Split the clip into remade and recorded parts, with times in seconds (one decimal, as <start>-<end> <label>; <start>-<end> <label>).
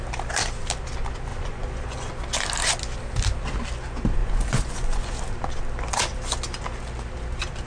0.0-1.3 recorded; 1.3-2.1 remade; 2.1-4.2 recorded; 4.2-5.2 remade; 5.2-7.7 recorded